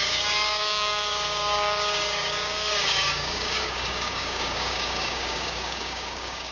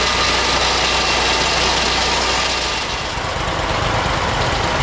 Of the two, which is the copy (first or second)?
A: first